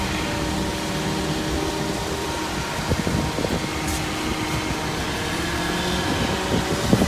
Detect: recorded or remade recorded